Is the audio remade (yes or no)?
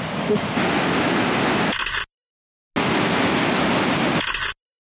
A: no